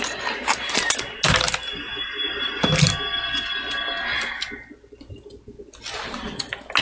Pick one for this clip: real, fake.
real